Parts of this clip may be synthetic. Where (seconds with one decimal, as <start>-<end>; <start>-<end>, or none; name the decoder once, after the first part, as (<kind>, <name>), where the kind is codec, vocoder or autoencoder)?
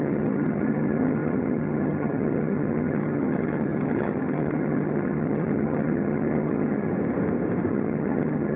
0.0-6.9 (vocoder, HiFi-GAN); 7.7-8.6